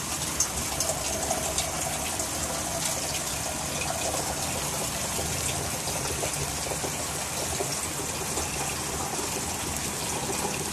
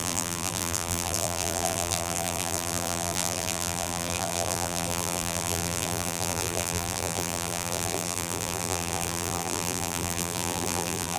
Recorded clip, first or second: first